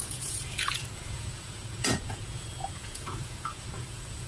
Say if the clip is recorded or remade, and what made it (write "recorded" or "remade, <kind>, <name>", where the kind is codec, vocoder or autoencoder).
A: remade, vocoder, Vocos